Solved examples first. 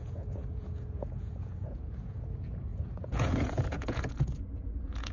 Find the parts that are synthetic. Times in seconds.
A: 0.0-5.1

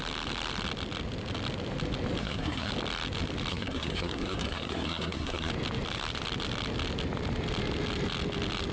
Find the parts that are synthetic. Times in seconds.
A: 2.2-2.7; 3.5-5.5

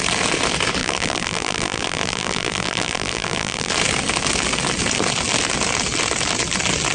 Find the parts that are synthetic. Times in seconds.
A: 0.8-3.7